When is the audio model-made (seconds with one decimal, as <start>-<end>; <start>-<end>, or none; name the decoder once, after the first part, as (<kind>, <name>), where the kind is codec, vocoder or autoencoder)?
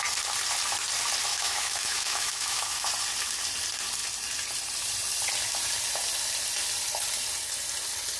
1.3-2.9 (autoencoder, DAC-VAE)